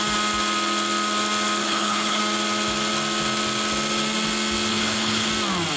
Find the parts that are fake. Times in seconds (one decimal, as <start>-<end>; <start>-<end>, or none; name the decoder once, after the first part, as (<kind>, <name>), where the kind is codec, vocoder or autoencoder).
1.6-2.2 (codec, HILCodec); 4.7-5.3